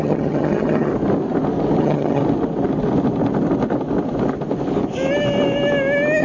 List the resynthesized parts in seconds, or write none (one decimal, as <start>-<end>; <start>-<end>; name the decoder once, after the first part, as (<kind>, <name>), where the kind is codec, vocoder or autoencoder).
0.0-0.9 (vocoder, HiFi-GAN); 1.8-2.2